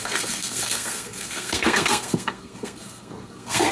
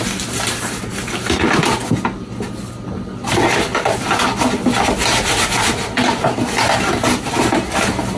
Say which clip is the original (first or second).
second